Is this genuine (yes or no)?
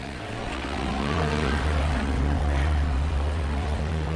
no